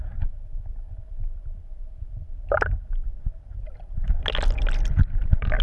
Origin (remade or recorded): recorded